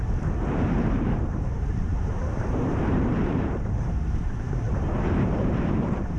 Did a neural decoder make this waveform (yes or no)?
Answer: yes